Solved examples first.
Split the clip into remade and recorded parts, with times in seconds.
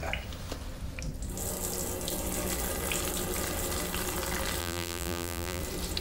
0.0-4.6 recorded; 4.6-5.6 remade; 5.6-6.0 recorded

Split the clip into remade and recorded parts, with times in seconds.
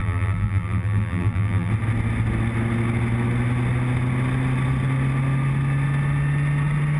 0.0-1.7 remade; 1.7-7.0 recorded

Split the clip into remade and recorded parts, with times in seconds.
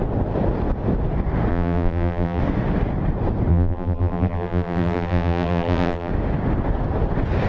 0.0-1.5 recorded; 1.5-2.4 remade; 2.4-3.5 recorded; 3.5-6.1 remade; 6.1-7.5 recorded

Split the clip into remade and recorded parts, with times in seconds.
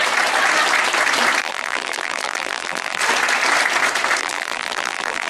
0.0-1.4 recorded; 1.4-3.0 remade; 3.0-4.2 recorded; 4.2-5.3 remade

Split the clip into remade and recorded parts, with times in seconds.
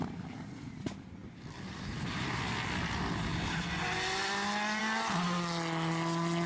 0.0-1.2 recorded; 1.2-2.5 remade; 2.5-6.5 recorded